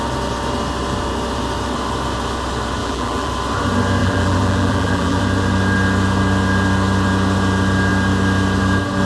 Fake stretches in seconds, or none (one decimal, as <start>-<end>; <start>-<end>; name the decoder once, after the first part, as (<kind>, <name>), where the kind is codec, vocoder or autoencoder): 2.8-3.3 (vocoder, BigVGAN v2); 4.0-5.2